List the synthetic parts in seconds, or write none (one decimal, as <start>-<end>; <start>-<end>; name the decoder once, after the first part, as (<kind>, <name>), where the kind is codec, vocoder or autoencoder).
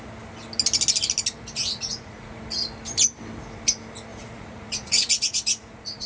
1.6-2.4 (vocoder, Vocos); 4.1-6.1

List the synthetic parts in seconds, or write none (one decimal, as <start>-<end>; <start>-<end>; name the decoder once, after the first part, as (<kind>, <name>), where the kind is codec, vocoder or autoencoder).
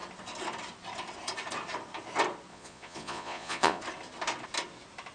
2.5-3.8 (vocoder, Vocos)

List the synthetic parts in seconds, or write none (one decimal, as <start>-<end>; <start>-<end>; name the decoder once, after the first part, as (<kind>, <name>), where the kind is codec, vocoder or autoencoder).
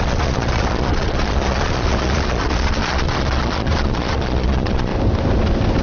0.0-4.9 (vocoder, Vocos)